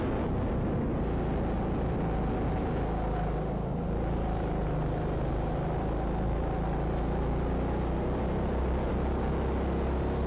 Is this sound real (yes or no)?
yes